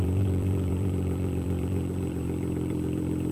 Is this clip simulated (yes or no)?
yes